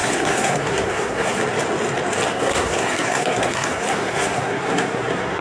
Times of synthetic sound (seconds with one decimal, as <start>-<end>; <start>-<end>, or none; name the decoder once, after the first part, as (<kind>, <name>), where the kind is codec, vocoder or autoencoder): 0.0-1.4 (codec, SNAC); 2.3-5.4

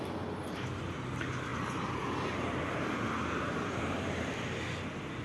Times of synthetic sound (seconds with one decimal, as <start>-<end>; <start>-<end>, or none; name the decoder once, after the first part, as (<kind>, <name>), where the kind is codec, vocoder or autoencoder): none

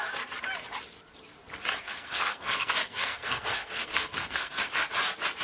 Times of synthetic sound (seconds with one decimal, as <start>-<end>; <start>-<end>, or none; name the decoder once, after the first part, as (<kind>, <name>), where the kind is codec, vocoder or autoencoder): 1.8-4.7 (codec, SNAC)